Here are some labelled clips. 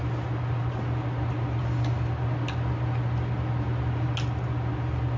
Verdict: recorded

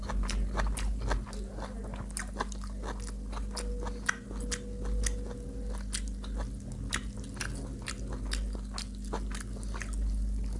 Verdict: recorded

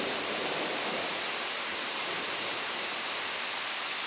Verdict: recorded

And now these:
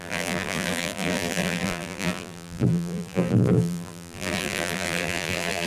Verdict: remade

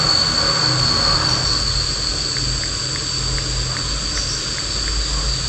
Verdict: recorded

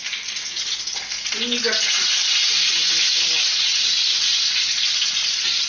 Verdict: recorded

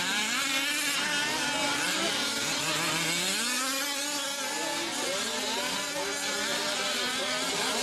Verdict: recorded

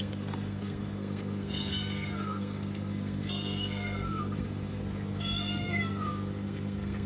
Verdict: remade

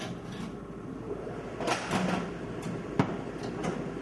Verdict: recorded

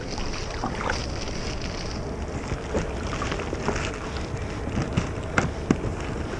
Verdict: recorded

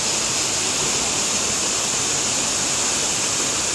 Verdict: recorded